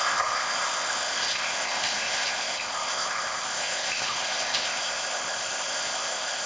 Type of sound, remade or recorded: remade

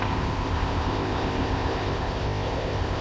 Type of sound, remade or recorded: remade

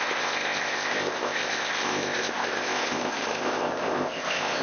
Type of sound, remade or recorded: remade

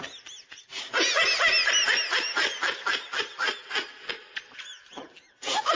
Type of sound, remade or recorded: recorded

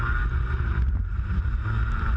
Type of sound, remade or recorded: recorded